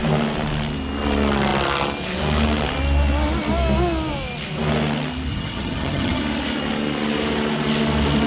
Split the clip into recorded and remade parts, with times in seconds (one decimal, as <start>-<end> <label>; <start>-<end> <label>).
0.0-5.3 recorded; 5.3-6.2 remade; 6.2-8.3 recorded

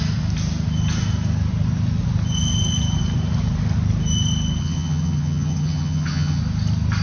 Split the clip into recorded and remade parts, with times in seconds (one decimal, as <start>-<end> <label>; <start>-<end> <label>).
0.0-4.6 recorded; 4.6-6.4 remade; 6.4-7.0 recorded